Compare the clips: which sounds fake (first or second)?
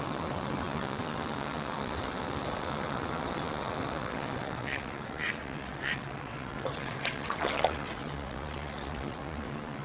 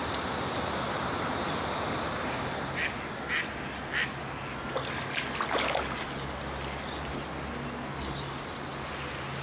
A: first